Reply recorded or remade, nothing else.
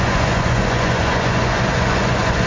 remade